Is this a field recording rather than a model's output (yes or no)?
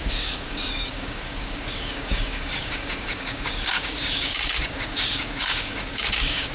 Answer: no